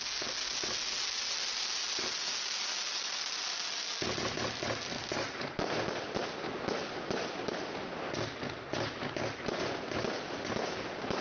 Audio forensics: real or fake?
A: real